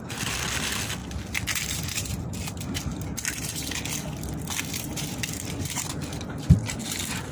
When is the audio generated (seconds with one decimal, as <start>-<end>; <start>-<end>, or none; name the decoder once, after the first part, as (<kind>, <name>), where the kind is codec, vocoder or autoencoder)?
none